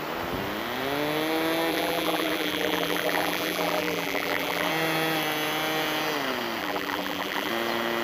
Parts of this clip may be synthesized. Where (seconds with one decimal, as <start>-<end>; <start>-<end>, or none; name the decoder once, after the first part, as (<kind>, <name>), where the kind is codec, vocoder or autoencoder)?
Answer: 1.7-4.7 (vocoder, BigVGAN v2); 6.6-7.5